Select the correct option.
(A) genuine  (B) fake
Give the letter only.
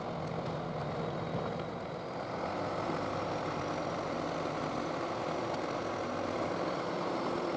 A